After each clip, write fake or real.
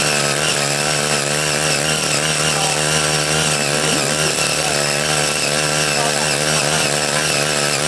real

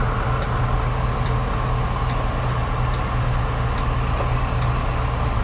real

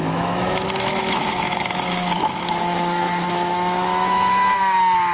fake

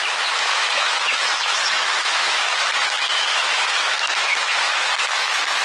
fake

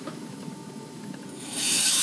fake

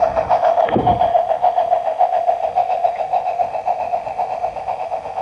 fake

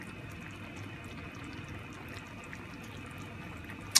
real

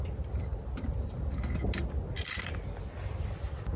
real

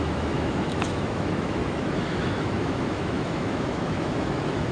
fake